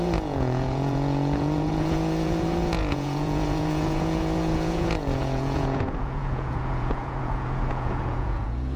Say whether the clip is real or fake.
fake